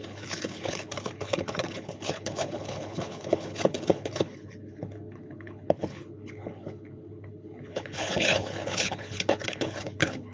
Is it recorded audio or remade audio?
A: remade